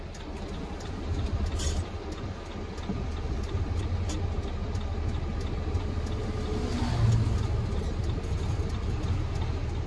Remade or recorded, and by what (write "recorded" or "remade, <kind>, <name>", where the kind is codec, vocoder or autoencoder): recorded